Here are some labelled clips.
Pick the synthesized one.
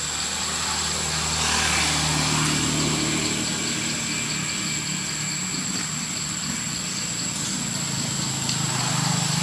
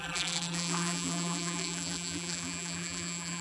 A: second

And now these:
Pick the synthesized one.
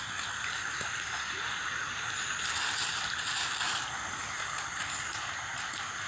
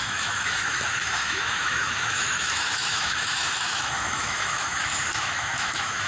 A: second